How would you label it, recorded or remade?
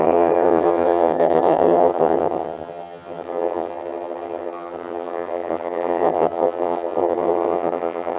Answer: remade